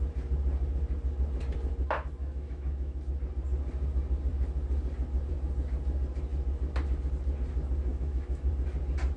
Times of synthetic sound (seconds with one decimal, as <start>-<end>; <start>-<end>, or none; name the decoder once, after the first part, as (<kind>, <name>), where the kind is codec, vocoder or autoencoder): 2.2-3.0 (autoencoder, DAC-VAE); 7.9-8.5